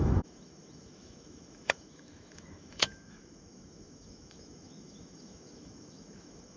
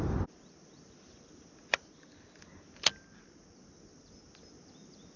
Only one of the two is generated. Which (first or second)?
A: first